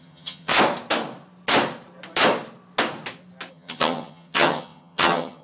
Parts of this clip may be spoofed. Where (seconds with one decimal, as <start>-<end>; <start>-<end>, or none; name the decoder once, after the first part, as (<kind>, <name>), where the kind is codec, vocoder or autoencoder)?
0.0-0.5 (vocoder, HiFi-GAN); 3.5-5.4